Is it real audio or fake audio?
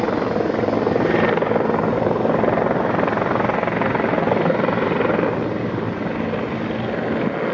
real